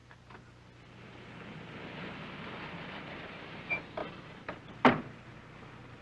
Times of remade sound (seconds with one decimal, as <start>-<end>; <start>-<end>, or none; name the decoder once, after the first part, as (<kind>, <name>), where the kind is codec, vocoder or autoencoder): none